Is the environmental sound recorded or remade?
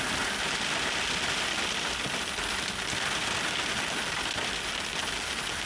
recorded